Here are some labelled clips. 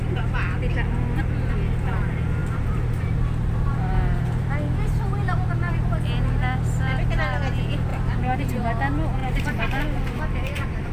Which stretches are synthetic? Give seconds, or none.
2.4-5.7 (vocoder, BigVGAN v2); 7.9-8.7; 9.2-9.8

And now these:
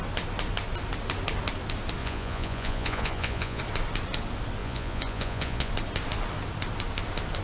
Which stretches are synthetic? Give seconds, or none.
2.0-3.6 (vocoder, Vocos); 4.6-5.7

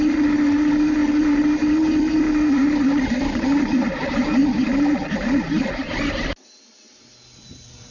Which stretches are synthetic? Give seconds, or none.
none

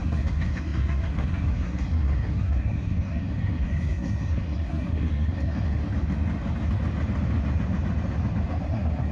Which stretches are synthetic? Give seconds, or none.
0.0-5.8 (codec, SNAC); 8.6-9.1

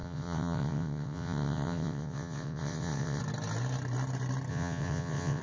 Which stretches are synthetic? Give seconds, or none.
0.0-3.2 (vocoder, WaveNeXt); 4.5-5.4

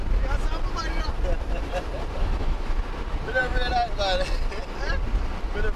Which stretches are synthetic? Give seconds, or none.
2.2-2.8 (autoencoder, DAC-VAE)

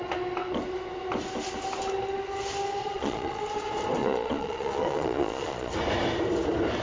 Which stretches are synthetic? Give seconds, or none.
2.8-3.4 (vocoder, Vocos); 4.0-5.7

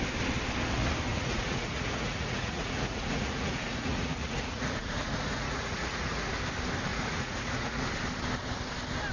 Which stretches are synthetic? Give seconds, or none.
1.1-6.3 (vocoder, Vocos); 6.9-7.9